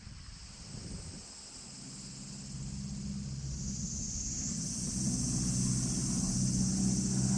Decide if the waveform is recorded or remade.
recorded